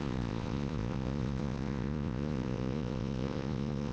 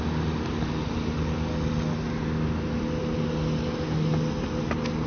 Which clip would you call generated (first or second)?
first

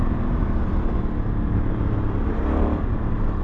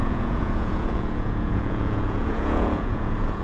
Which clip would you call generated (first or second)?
second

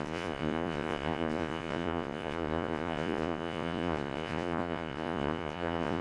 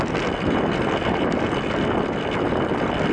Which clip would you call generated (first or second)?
first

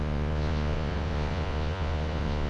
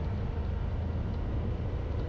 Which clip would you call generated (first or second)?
first